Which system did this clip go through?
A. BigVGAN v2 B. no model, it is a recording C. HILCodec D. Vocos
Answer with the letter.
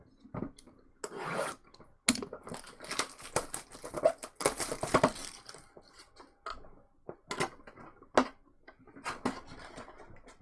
B